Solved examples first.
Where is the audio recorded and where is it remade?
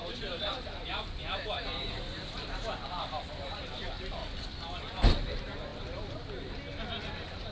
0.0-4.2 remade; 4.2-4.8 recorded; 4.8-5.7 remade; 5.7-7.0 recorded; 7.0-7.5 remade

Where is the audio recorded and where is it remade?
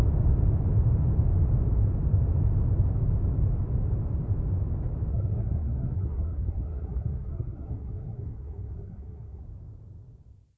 0.0-5.1 recorded; 5.1-9.4 remade; 9.4-10.6 recorded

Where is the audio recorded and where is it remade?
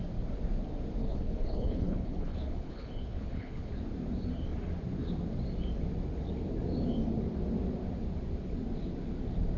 0.0-1.0 recorded; 1.0-3.7 remade; 3.7-9.6 recorded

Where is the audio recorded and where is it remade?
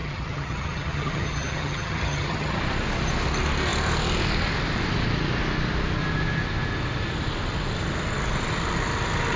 0.0-2.6 remade; 2.6-9.4 recorded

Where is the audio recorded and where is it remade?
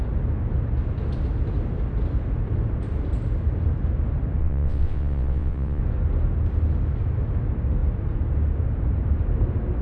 0.0-4.4 recorded; 4.4-5.8 remade; 5.8-9.8 recorded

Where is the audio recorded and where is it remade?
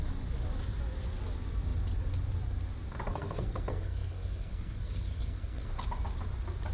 0.0-3.1 recorded; 3.1-5.7 remade; 5.7-6.7 recorded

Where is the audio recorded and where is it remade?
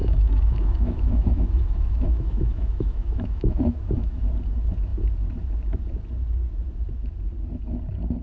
0.0-4.2 remade; 4.2-8.2 recorded